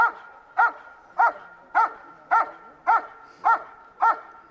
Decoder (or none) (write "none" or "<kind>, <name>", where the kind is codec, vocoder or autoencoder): none